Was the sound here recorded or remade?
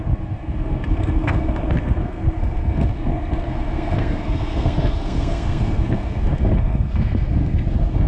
remade